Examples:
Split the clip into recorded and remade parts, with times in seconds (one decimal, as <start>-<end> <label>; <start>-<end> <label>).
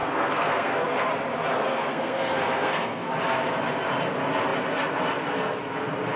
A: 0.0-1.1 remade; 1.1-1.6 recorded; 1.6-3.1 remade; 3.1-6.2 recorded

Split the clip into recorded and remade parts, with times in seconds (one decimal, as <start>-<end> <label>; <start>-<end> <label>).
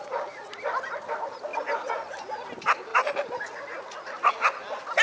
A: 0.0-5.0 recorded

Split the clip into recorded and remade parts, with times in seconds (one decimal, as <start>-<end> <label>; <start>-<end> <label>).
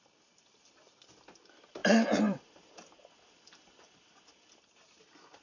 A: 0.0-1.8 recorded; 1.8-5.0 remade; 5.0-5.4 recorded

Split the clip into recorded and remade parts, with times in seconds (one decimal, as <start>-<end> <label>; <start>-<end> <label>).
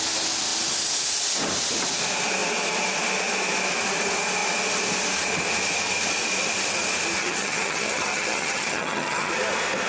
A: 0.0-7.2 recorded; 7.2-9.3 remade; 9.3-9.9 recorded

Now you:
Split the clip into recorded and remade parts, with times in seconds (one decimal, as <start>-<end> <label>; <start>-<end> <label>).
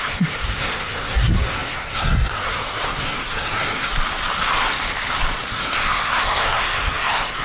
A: 0.0-3.9 remade; 3.9-5.5 recorded; 5.5-7.4 remade